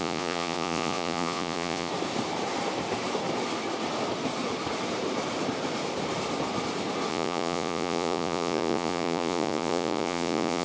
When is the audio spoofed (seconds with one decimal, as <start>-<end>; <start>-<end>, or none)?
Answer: 0.0-1.9; 7.1-10.6